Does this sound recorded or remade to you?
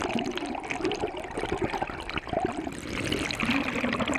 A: recorded